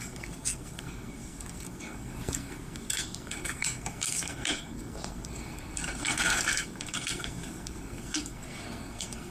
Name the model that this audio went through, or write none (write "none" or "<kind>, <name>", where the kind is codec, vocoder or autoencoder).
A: codec, SNAC